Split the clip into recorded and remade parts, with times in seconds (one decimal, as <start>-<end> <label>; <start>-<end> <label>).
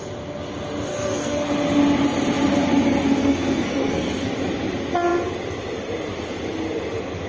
0.0-0.9 recorded; 0.9-1.5 remade; 1.5-3.2 recorded; 3.2-4.3 remade; 4.3-7.3 recorded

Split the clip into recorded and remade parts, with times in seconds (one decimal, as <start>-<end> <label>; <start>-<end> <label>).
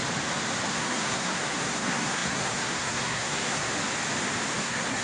0.0-0.7 recorded; 0.7-3.7 remade; 3.7-4.6 recorded; 4.6-5.0 remade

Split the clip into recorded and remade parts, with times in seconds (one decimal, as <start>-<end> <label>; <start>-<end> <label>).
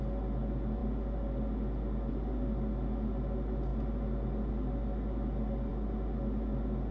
0.0-6.9 recorded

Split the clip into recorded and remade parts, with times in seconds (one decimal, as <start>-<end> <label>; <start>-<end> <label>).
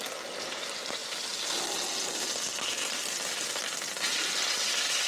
0.0-5.1 recorded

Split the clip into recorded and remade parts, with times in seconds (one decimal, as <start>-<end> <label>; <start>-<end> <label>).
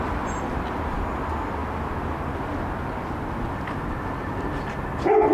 0.0-5.3 recorded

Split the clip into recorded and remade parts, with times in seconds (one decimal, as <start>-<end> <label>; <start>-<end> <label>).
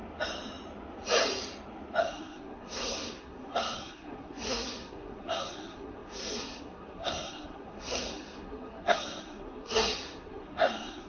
0.0-2.0 recorded; 2.0-11.1 remade